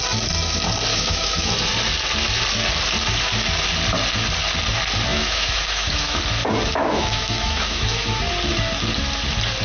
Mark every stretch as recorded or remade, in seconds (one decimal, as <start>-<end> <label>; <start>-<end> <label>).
0.0-0.9 recorded; 0.9-1.5 remade; 1.5-5.1 recorded; 5.1-6.2 remade; 6.2-6.8 recorded; 6.8-8.2 remade; 8.2-9.6 recorded